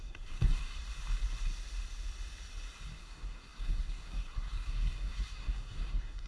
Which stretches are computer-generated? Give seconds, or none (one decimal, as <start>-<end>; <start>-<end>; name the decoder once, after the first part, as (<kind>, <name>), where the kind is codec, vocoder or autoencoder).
0.0-0.6 (codec, SNAC); 3.0-6.3